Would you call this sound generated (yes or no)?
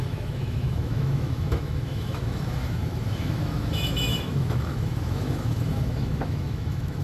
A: yes